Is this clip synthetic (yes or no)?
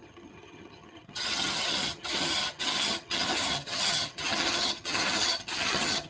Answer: yes